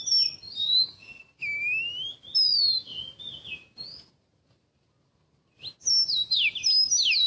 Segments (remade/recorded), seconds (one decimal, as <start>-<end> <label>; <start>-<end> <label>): 0.0-0.6 recorded; 0.6-1.2 remade; 1.2-7.3 recorded